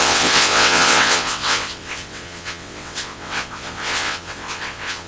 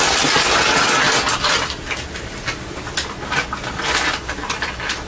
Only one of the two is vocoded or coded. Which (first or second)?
first